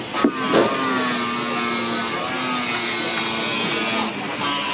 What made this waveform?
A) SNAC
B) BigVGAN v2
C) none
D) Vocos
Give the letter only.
C